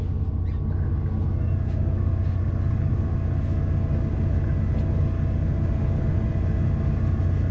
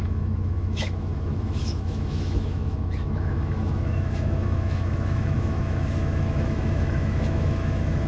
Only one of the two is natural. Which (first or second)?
first